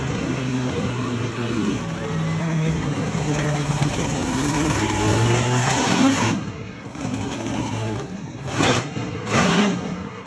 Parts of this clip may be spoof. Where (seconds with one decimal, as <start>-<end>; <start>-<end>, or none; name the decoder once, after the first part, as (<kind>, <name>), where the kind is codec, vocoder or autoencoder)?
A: 0.0-1.8 (codec, SNAC); 2.4-10.3